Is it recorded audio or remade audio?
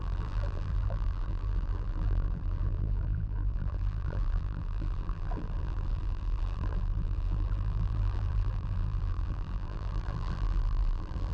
remade